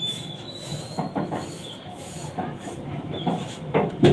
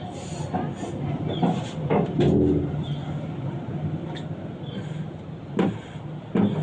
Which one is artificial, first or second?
first